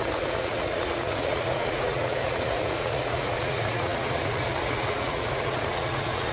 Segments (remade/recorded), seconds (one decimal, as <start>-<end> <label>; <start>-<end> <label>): 0.0-6.3 remade